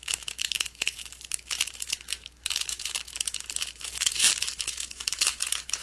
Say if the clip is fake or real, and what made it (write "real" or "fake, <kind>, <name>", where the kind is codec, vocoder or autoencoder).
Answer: fake, autoencoder, DAC-VAE